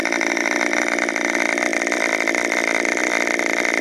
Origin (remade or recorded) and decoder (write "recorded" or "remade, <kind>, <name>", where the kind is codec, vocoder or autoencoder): recorded